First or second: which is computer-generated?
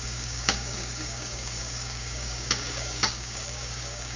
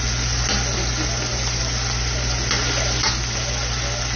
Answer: first